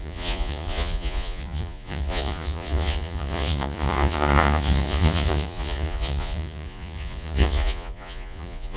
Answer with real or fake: fake